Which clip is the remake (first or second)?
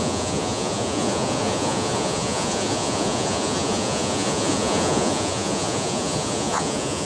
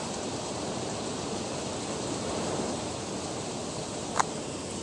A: first